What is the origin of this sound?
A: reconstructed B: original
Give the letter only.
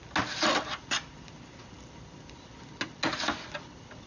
B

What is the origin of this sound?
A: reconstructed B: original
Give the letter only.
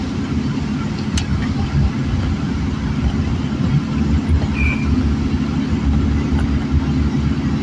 B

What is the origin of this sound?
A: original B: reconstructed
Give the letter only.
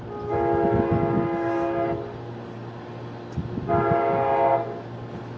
A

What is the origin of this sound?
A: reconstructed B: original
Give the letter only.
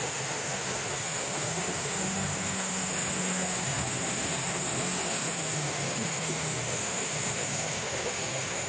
A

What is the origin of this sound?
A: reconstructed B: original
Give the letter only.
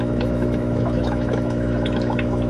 A